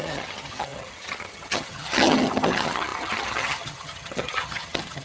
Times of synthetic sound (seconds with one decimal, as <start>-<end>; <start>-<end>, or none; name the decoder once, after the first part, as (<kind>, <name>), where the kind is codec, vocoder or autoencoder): 0.0-5.0 (vocoder, HiFi-GAN)